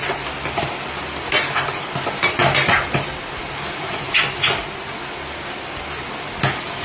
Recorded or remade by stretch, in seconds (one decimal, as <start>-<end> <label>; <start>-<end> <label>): 0.0-6.8 recorded